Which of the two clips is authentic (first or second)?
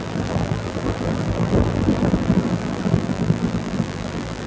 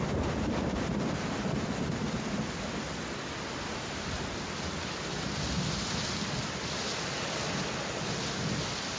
second